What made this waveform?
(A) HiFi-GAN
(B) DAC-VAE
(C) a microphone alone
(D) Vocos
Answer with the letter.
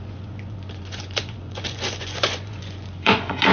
D